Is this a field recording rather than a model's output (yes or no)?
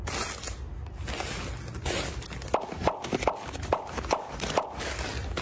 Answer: yes